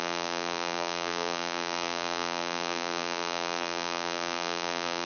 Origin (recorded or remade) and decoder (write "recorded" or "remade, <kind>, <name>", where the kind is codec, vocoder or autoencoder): remade, vocoder, BigVGAN v2